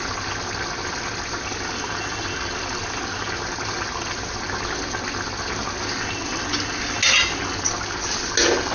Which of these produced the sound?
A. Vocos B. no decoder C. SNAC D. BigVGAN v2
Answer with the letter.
B